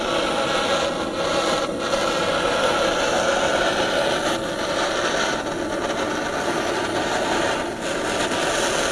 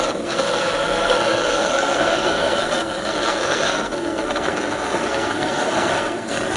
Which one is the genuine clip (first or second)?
first